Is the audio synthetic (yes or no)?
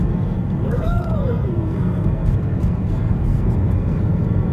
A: yes